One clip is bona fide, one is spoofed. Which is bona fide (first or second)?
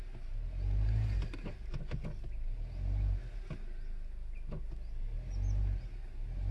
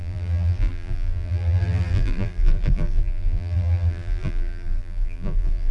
first